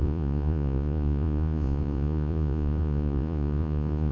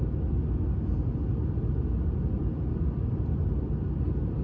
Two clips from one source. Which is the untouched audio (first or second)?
second